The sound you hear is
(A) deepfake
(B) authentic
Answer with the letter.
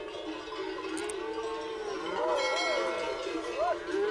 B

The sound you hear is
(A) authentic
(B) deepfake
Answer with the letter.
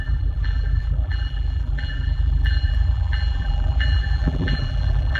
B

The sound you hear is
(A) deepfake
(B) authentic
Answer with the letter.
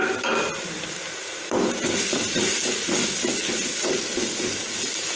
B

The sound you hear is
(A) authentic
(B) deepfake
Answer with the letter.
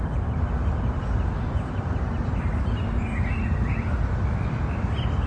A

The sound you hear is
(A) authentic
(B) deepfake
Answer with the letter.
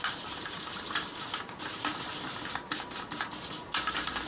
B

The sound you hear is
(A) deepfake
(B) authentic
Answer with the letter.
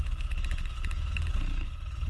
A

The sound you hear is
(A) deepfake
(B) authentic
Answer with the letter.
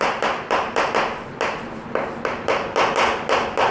B